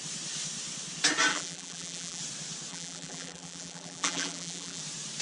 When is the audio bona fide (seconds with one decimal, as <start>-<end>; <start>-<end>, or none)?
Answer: 0.0-1.3; 2.2-2.7; 4.8-5.2